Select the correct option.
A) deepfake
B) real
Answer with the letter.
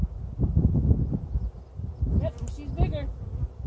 B